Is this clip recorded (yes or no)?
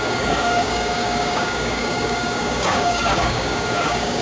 no